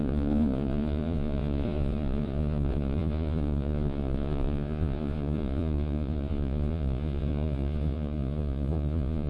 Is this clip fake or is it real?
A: fake